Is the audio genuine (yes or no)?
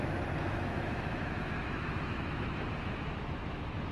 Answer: no